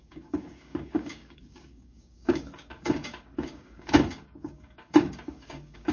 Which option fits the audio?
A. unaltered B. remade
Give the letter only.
B